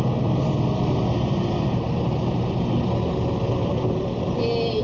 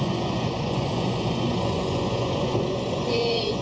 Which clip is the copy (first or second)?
second